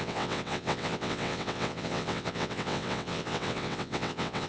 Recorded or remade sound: remade